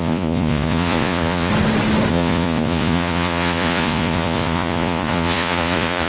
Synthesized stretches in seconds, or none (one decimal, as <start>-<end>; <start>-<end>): 0.0-1.5; 2.1-6.1